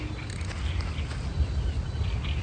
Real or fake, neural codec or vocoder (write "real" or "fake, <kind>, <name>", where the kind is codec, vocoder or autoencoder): real